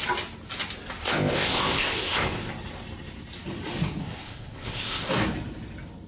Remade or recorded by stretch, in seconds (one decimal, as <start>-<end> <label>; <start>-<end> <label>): 0.0-1.0 recorded; 1.0-2.5 remade; 2.5-4.0 recorded; 4.0-5.1 remade; 5.1-6.1 recorded